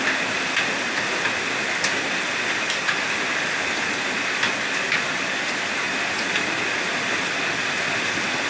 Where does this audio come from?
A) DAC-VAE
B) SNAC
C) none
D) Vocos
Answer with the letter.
C